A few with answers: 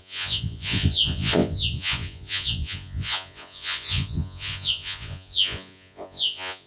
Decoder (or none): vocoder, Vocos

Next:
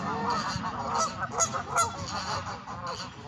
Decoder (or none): none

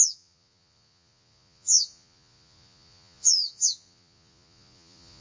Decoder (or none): vocoder, Vocos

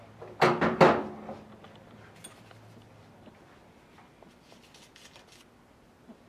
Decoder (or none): none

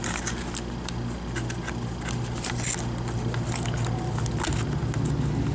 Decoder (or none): none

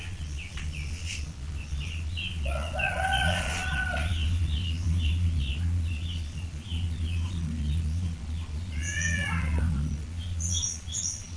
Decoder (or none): vocoder, Vocos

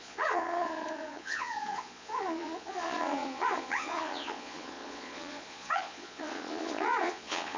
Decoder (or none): vocoder, Vocos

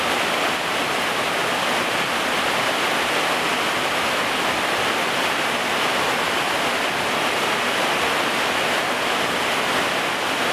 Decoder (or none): none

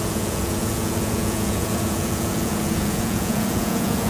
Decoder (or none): vocoder, Vocos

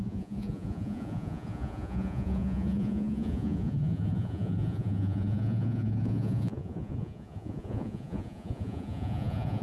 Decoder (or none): vocoder, Vocos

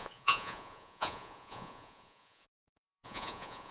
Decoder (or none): vocoder, Vocos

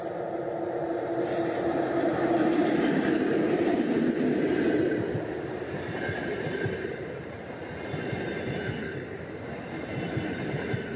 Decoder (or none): none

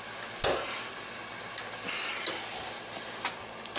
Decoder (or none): none